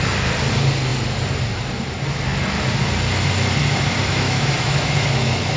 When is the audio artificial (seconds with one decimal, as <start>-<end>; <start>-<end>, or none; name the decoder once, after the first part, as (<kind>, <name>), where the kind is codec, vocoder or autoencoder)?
4.1-5.6 (autoencoder, DAC-VAE)